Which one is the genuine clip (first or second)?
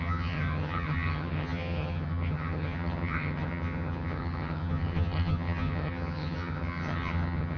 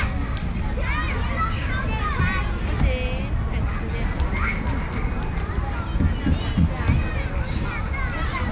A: second